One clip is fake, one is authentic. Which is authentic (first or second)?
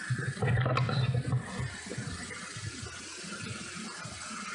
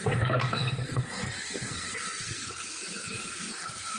first